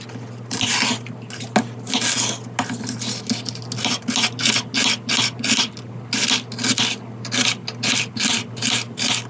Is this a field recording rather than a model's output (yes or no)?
yes